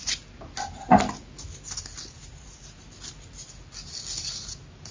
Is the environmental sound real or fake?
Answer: real